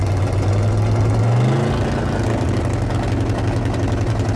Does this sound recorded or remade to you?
recorded